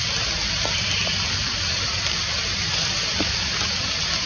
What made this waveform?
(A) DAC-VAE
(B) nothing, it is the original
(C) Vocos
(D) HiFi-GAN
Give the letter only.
B